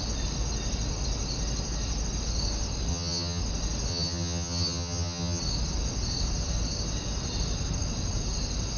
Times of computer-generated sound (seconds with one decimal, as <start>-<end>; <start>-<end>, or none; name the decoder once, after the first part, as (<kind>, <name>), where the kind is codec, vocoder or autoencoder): 2.9-3.4 (vocoder, HiFi-GAN); 3.9-5.4